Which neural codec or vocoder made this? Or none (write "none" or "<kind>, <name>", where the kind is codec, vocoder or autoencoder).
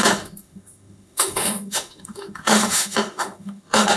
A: autoencoder, DAC-VAE